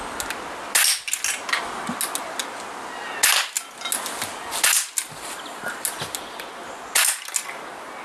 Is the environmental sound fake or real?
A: real